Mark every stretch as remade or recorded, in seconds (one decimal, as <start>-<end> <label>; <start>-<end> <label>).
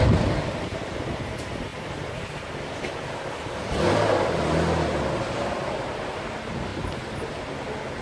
0.0-8.0 recorded